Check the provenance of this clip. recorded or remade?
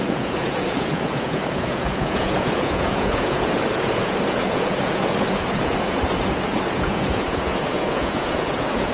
remade